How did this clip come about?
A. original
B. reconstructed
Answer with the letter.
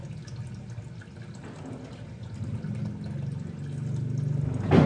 A